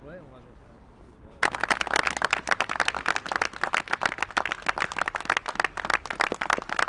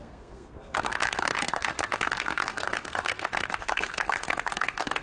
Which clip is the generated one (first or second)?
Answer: second